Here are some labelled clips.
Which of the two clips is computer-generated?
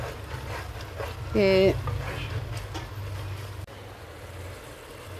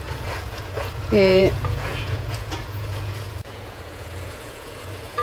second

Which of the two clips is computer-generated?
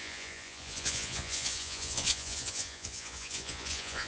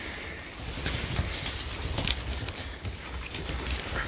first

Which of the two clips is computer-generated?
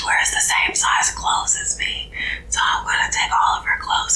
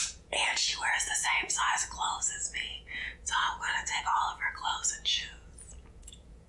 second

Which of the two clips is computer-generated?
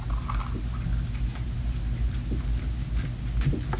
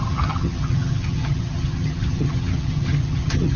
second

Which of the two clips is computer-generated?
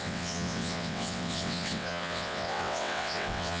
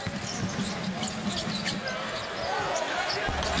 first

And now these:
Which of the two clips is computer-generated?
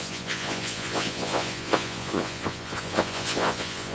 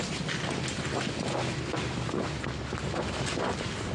first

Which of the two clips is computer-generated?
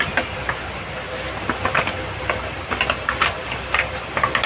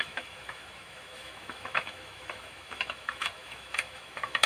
second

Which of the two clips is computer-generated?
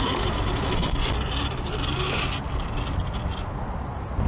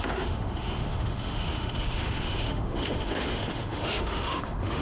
second